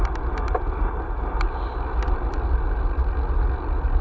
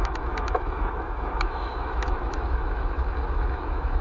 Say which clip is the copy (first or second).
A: second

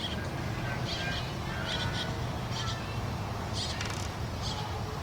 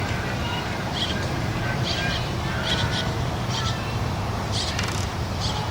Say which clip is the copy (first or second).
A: second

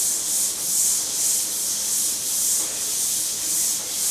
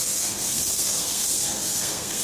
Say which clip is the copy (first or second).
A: second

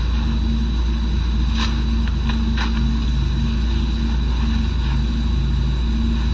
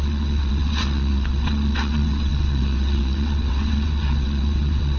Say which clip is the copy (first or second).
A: second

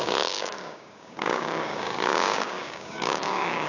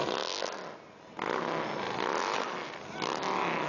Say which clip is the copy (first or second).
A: first